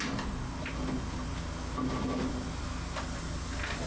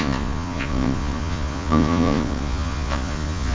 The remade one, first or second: second